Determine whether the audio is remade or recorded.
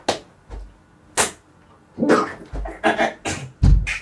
recorded